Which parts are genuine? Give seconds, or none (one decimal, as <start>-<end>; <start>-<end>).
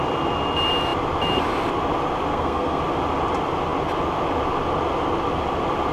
0.0-2.3; 2.8-5.9